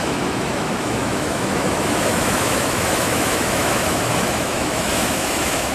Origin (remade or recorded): remade